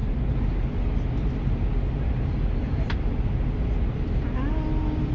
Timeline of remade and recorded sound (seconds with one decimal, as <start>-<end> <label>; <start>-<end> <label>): 0.0-5.1 recorded